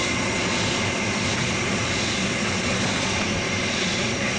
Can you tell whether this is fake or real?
fake